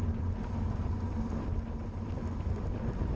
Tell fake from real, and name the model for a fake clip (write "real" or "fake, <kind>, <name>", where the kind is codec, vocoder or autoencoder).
real